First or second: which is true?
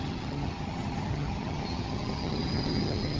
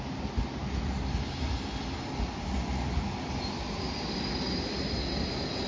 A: second